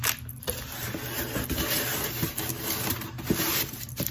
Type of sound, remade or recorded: recorded